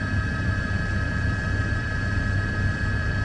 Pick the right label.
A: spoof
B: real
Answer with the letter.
A